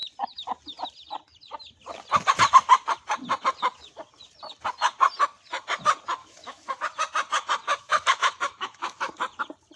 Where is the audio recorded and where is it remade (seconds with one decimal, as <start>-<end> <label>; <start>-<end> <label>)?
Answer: 0.0-6.2 recorded; 6.2-6.8 remade; 6.8-7.7 recorded; 7.7-9.1 remade; 9.1-9.8 recorded